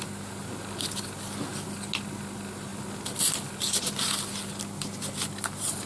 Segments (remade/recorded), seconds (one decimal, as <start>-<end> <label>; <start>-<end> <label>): 0.0-5.9 recorded

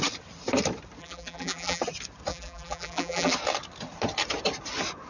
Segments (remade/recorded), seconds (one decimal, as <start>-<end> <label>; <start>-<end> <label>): 0.0-1.0 recorded; 1.0-1.8 remade; 1.8-2.3 recorded; 2.3-3.3 remade; 3.3-5.1 recorded